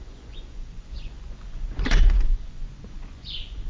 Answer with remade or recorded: remade